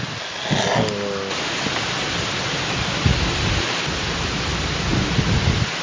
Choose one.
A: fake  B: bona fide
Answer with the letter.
B